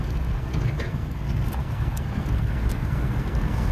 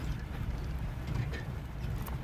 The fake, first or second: first